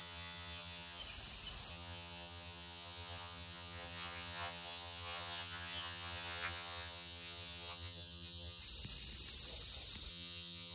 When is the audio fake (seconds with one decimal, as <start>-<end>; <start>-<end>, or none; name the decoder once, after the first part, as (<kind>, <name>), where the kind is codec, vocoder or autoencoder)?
0.0-1.0 (vocoder, HiFi-GAN); 1.7-8.6; 10.1-10.7